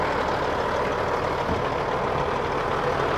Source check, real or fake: real